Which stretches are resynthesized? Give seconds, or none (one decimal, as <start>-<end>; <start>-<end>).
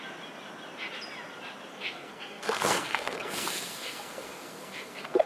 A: 1.7-5.3